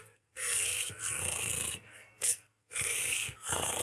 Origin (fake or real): fake